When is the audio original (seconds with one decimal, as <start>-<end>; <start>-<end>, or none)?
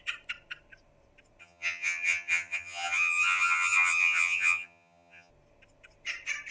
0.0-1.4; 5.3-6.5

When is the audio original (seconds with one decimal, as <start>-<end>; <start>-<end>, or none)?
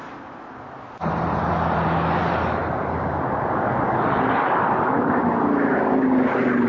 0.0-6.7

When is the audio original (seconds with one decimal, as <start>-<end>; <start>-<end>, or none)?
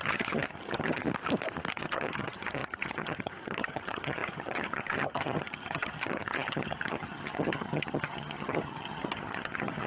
1.0-1.7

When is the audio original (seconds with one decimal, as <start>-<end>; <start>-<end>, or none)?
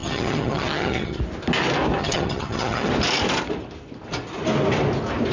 1.2-2.0; 2.9-5.3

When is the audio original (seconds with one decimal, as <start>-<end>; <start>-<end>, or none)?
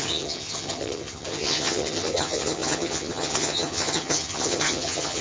none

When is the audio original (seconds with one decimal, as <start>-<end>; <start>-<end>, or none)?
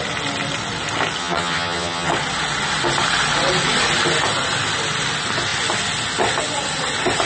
0.0-1.2; 2.1-7.3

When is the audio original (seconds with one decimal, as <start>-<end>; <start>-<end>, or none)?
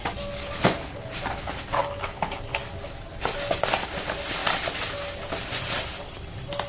0.0-6.7